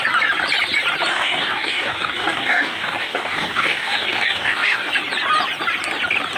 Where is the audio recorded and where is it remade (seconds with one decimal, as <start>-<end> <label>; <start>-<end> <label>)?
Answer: 0.0-1.1 recorded; 1.1-4.9 remade; 4.9-6.4 recorded